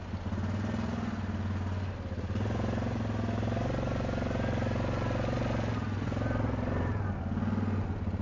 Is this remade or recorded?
recorded